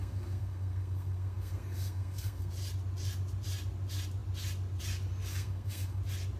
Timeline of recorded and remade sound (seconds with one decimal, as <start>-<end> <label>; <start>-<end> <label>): 0.0-2.5 remade; 2.5-5.3 recorded; 5.3-6.0 remade; 6.0-6.4 recorded